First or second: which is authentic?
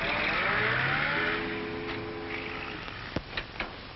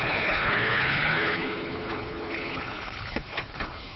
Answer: first